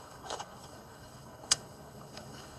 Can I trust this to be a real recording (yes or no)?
no